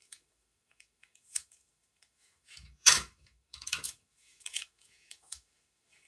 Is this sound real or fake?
fake